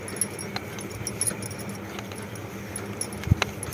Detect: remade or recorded recorded